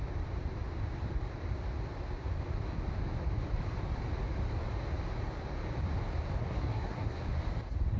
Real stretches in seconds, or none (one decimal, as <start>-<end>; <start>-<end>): 0.0-6.4; 7.2-8.0